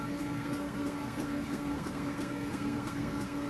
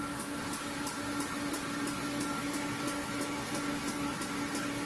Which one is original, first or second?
second